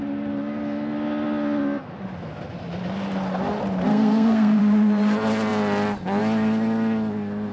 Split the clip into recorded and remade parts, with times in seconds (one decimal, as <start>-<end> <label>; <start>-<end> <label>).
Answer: 0.0-3.9 recorded; 3.9-4.6 remade; 4.6-7.5 recorded